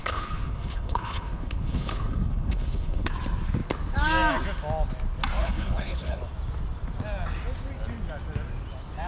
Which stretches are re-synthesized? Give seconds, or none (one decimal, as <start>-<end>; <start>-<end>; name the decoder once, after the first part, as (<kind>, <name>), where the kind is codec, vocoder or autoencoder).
0.0-3.1 (codec, HILCodec); 5.4-6.2